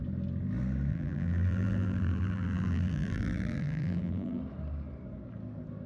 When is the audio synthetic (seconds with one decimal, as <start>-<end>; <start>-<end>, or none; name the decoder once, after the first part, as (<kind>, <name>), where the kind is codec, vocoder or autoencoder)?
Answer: 0.9-4.4 (vocoder, BigVGAN v2)